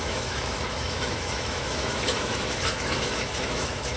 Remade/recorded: remade